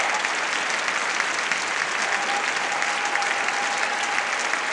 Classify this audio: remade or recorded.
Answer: recorded